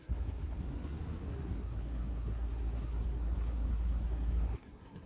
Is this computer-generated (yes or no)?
yes